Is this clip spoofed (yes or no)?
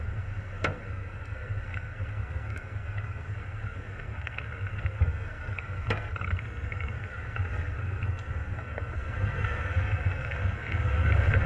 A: yes